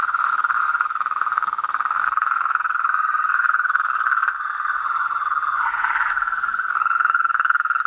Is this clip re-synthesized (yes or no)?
yes